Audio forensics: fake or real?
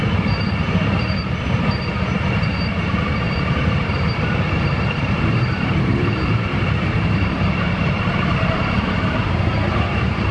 fake